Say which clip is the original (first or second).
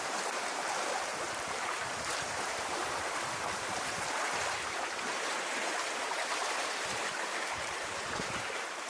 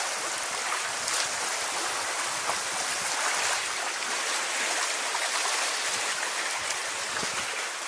second